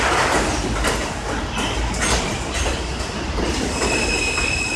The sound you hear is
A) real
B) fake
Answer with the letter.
A